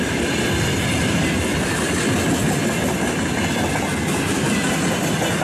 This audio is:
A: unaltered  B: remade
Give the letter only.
A